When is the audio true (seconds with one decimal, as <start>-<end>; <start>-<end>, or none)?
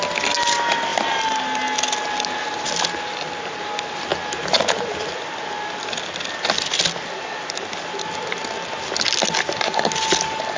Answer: 0.0-10.6